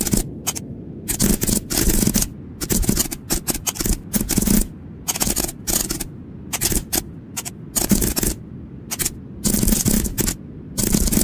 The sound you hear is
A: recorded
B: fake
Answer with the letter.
A